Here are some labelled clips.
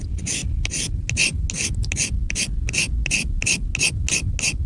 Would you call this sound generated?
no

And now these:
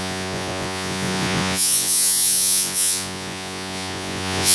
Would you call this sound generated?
yes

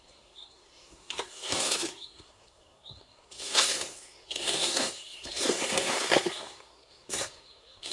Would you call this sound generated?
yes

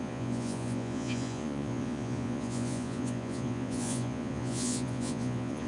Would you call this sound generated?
yes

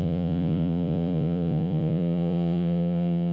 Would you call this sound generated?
yes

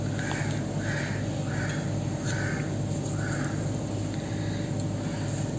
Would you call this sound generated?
no